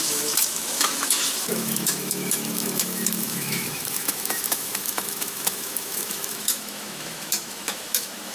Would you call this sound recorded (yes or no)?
no